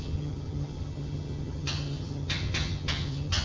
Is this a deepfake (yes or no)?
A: yes